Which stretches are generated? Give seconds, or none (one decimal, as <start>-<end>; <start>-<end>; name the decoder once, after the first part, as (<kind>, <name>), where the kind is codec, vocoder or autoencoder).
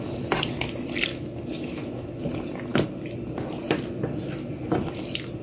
1.1-2.2 (autoencoder, DAC-VAE)